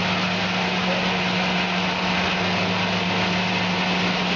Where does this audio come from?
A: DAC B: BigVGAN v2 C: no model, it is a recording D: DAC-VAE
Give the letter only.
C